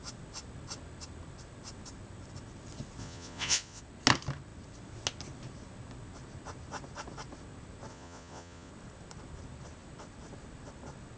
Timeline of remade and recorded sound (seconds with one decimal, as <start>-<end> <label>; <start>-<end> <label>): 0.0-3.0 recorded; 3.0-3.8 remade; 3.8-7.9 recorded; 7.9-8.7 remade; 8.7-11.2 recorded